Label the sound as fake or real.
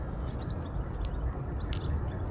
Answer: real